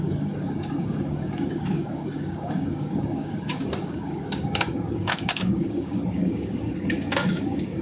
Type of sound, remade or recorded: remade